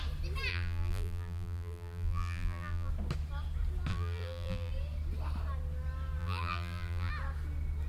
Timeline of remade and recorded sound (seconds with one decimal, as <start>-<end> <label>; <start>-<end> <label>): 0.0-0.5 recorded; 0.5-2.9 remade; 2.9-3.9 recorded; 3.9-4.7 remade; 4.7-6.2 recorded; 6.2-7.1 remade; 7.1-7.9 recorded